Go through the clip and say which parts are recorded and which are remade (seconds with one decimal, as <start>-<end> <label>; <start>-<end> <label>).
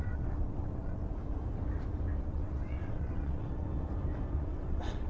0.0-1.0 remade; 1.0-2.2 recorded; 2.2-3.7 remade; 3.7-4.3 recorded; 4.3-5.1 remade